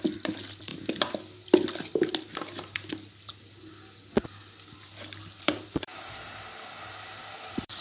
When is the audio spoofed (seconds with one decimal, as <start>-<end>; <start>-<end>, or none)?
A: 0.0-0.7; 5.4-7.8